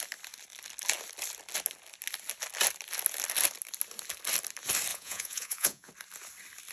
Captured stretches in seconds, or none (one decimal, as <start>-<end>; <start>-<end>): 0.0-4.9; 5.9-6.7